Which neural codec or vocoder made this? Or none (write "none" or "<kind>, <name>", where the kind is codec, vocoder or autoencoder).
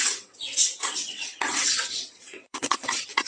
vocoder, WaveNeXt